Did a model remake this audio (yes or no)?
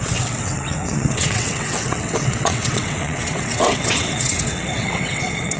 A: yes